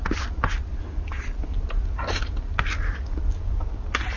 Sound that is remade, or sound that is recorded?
recorded